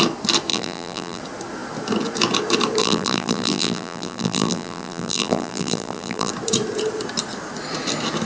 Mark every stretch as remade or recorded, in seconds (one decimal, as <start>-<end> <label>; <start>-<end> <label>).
0.0-0.5 recorded; 0.5-1.2 remade; 1.2-2.8 recorded; 2.8-6.3 remade; 6.3-8.3 recorded